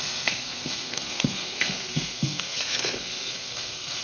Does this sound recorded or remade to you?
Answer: remade